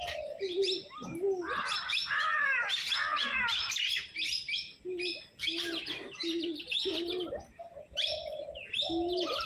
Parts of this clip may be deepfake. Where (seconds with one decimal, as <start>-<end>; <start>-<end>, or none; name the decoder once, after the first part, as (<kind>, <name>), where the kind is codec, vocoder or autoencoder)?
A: none